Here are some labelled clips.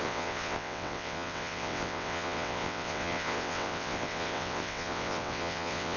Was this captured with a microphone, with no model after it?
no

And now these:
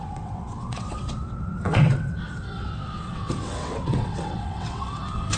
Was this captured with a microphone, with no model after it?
no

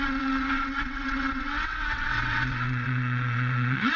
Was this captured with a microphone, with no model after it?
no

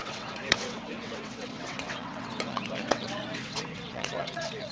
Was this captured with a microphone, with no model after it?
no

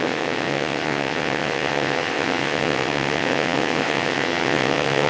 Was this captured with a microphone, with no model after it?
no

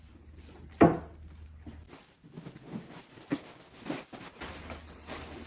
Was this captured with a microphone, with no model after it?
yes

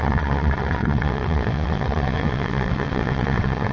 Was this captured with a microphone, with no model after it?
no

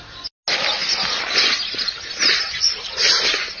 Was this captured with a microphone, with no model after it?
yes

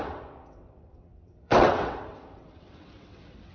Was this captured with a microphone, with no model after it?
no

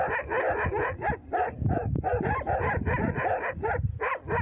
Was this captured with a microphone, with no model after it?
yes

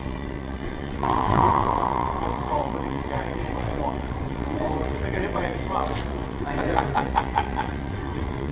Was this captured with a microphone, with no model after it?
no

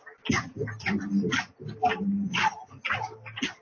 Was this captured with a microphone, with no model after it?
yes